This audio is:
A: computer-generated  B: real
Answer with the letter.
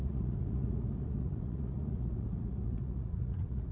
A